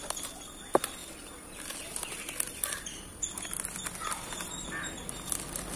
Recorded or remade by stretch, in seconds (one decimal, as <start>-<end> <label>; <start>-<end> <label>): 0.0-5.8 recorded